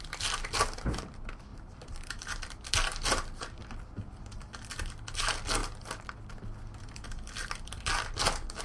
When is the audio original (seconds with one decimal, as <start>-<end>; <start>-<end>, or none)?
0.0-1.5; 2.2-8.6